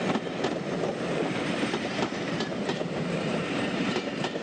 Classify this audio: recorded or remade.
remade